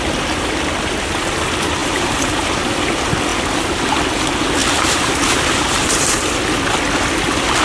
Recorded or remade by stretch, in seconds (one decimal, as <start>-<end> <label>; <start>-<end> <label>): 0.0-1.8 recorded; 1.8-2.9 remade; 2.9-4.6 recorded; 4.6-6.4 remade; 6.4-7.6 recorded